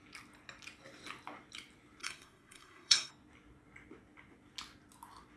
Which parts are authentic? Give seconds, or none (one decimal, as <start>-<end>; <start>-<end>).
0.0-2.0; 3.1-5.4